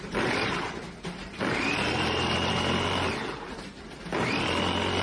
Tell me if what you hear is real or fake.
real